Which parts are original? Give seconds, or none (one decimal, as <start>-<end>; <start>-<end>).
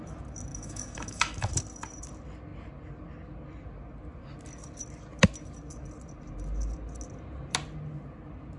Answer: 0.0-0.5; 1.5-8.6